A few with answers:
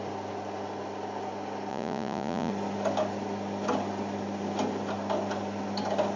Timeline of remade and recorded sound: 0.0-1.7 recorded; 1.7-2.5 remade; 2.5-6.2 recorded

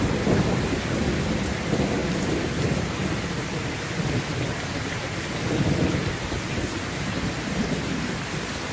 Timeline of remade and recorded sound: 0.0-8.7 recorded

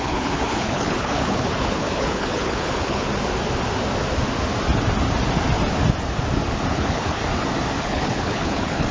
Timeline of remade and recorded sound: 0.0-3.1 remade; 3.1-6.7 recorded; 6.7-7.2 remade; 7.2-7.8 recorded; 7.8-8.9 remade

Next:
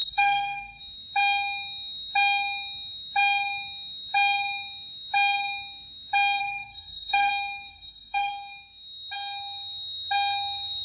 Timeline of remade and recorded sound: 0.0-0.8 remade; 0.8-6.4 recorded; 6.4-7.3 remade; 7.3-7.7 recorded; 7.7-8.3 remade; 8.3-10.8 recorded